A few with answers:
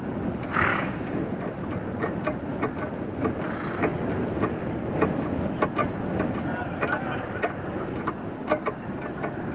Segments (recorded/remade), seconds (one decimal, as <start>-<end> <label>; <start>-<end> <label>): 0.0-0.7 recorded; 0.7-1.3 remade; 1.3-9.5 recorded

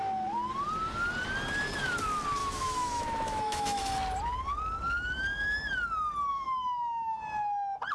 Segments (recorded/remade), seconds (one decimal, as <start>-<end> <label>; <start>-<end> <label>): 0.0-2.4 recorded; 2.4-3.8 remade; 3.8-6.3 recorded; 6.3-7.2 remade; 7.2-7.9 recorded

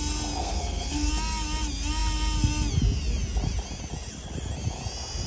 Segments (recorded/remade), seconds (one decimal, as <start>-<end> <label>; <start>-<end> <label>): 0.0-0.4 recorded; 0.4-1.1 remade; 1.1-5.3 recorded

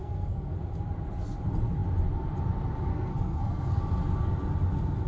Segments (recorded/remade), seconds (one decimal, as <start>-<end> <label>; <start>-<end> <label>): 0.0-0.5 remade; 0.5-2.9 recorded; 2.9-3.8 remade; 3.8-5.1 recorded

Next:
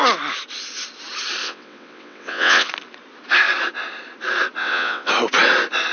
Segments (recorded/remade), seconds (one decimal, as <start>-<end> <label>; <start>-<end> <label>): 0.0-1.4 recorded; 1.4-2.7 remade; 2.7-4.6 recorded; 4.6-5.1 remade; 5.1-5.9 recorded

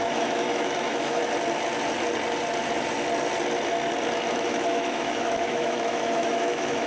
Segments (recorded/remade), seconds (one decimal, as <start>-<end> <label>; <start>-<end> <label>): 0.0-1.2 remade; 1.2-4.3 recorded; 4.3-6.9 remade

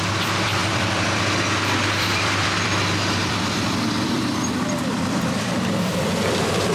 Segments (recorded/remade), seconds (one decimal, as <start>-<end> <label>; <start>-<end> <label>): 0.0-6.7 remade